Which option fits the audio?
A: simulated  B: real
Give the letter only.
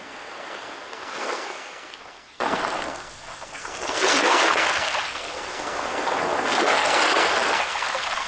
A